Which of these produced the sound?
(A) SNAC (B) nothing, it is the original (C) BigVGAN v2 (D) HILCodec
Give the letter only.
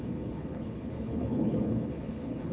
D